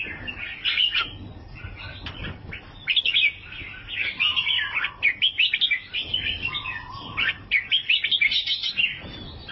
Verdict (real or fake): real